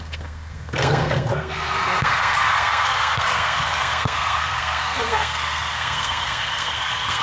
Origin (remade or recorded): remade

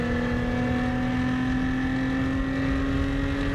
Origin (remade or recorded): recorded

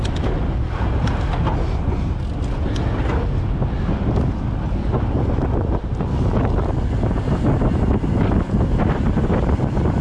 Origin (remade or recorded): recorded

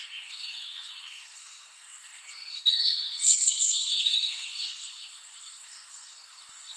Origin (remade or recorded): remade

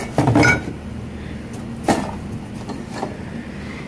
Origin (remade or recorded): recorded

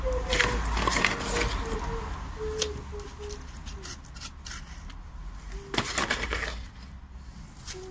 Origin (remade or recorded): recorded